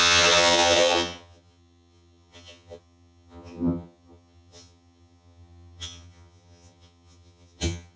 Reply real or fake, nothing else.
fake